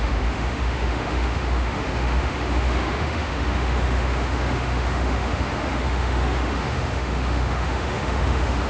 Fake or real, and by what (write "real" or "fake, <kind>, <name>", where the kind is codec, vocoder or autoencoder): fake, autoencoder, DAC-VAE